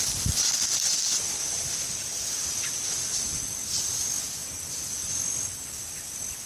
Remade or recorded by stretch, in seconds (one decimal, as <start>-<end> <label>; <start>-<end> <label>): 0.0-2.1 recorded; 2.1-2.6 remade; 2.6-6.5 recorded